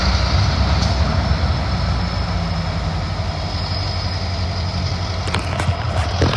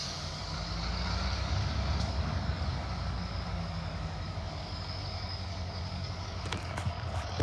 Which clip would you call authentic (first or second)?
first